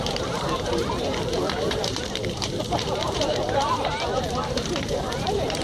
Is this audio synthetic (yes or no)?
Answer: yes